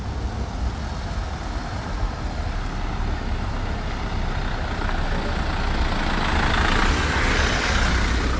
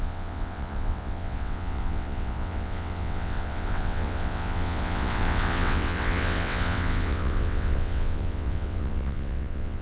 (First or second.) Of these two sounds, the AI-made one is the second